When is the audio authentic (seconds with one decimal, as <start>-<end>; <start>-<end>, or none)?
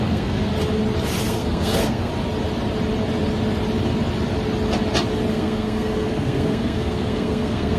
0.5-1.2; 2.1-5.3